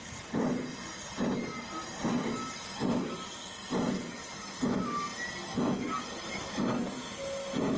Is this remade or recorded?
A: recorded